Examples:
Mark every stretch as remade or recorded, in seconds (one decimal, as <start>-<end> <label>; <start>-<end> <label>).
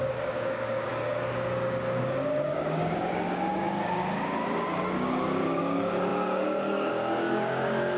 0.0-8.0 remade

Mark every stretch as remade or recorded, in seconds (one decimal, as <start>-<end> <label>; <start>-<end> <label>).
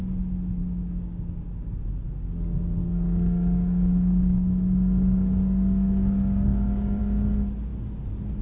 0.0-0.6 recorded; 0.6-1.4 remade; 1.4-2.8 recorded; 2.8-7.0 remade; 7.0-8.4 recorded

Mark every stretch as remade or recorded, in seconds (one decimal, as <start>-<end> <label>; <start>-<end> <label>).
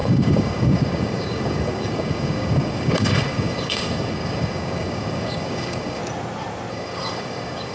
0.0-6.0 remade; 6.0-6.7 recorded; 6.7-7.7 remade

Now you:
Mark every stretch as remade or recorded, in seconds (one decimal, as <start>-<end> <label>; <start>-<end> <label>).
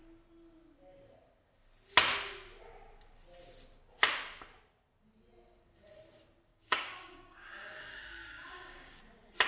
0.0-6.5 recorded; 6.5-9.0 remade; 9.0-9.5 recorded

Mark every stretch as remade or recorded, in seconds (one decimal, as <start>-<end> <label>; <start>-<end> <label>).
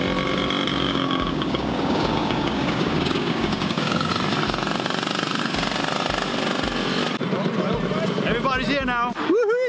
0.0-0.7 recorded; 0.7-4.1 remade; 4.1-9.7 recorded